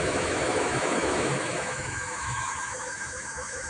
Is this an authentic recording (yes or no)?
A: no